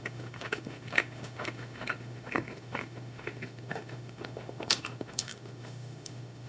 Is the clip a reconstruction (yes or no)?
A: yes